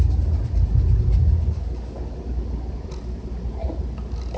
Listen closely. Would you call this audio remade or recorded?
recorded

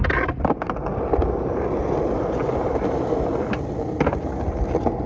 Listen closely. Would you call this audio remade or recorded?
recorded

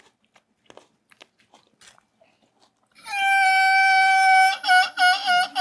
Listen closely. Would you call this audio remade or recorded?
recorded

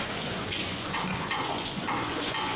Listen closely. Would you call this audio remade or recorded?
remade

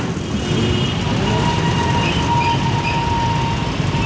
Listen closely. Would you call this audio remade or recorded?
recorded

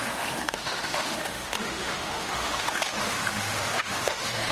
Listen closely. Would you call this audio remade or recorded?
remade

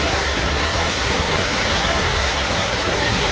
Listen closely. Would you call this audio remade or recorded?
remade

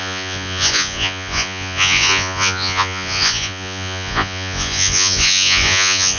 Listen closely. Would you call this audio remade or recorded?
remade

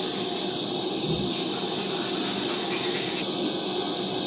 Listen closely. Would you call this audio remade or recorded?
recorded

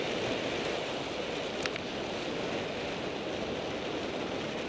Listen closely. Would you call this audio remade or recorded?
recorded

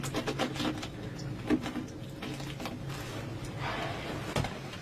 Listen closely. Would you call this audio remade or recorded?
recorded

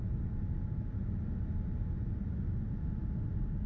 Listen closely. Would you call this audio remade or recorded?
recorded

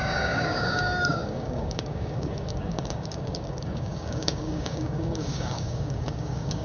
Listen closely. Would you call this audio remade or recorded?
remade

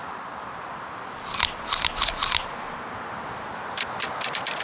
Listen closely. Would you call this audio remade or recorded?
recorded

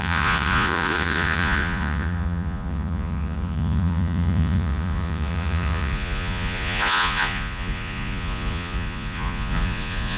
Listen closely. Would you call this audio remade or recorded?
remade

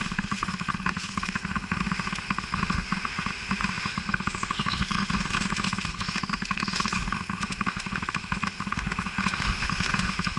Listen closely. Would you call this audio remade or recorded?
remade